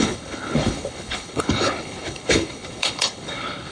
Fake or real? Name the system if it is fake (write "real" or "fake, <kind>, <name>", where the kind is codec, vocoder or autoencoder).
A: fake, codec, HILCodec